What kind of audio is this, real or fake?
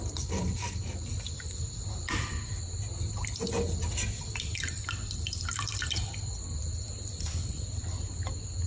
real